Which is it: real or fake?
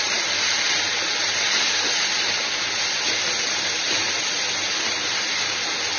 real